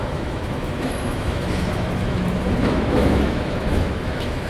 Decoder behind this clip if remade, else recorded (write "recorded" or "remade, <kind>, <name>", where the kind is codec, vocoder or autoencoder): remade, autoencoder, DAC-VAE